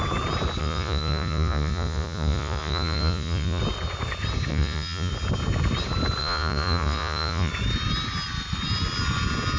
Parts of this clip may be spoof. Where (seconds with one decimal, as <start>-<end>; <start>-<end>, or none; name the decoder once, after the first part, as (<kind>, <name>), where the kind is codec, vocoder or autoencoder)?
0.6-3.6 (vocoder, Vocos); 4.5-5.1; 6.2-7.5